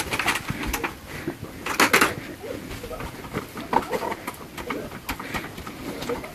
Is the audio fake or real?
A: real